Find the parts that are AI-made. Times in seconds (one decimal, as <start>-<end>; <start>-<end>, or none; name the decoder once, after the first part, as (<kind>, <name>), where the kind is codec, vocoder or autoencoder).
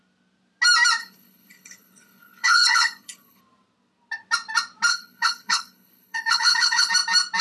1.0-3.4 (codec, HILCodec); 4.9-6.9